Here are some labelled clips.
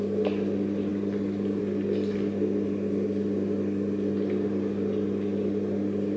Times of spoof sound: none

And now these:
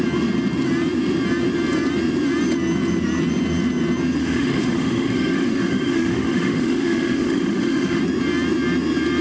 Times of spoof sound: 4.2-8.0 (autoencoder, DAC-VAE)

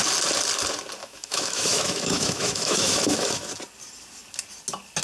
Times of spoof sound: 1.0-3.5 (autoencoder, DAC-VAE)

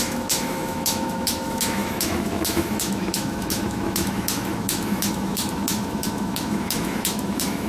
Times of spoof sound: 0.0-7.7 (autoencoder, DAC-VAE)

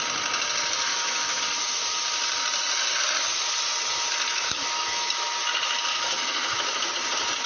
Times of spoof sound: 0.9-1.4 (autoencoder, DAC-VAE); 4.3-5.3; 5.9-6.9